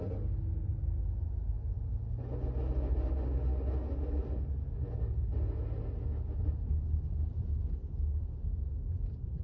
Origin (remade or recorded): recorded